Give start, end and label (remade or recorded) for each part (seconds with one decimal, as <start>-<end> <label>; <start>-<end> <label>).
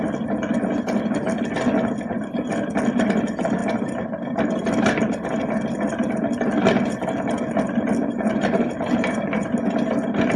0.0-3.6 recorded; 3.6-4.7 remade; 4.7-8.0 recorded; 8.0-9.6 remade; 9.6-10.4 recorded